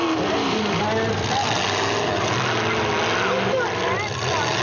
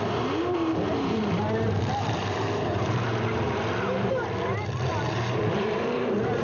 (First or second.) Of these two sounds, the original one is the first